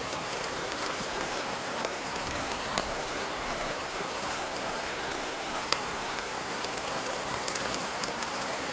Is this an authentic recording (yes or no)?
no